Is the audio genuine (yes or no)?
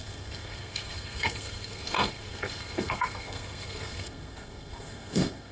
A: no